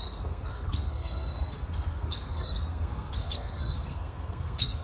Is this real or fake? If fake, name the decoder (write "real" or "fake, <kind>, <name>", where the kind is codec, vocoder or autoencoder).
fake, codec, SNAC